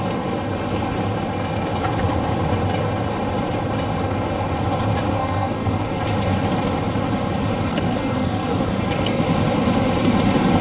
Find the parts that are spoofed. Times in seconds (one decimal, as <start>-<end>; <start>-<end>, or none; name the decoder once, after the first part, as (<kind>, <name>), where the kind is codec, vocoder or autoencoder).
5.2-6.0 (codec, SNAC); 7.7-9.2